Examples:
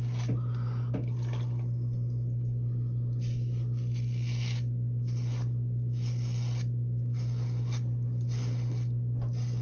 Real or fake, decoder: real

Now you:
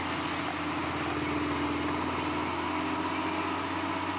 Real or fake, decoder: real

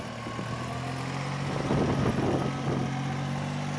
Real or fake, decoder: real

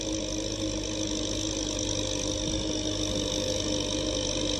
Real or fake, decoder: real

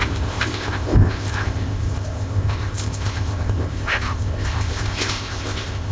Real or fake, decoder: fake, codec, ZipCodec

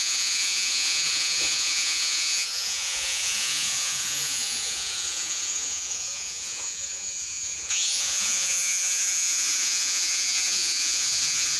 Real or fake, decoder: fake, vocoder, Vocos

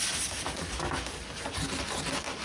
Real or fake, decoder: real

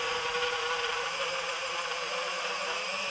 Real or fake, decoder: fake, vocoder, BigVGAN v2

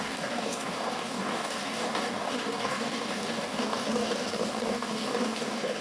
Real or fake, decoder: fake, codec, DAC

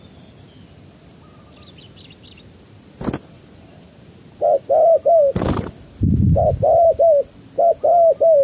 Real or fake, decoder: real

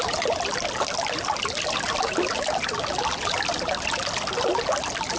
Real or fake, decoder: real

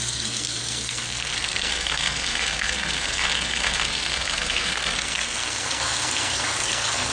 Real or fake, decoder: fake, codec, SNAC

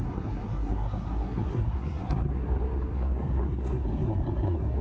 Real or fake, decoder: fake, codec, SNAC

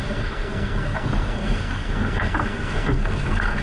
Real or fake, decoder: fake, codec, SNAC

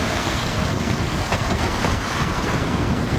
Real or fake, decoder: fake, codec, SNAC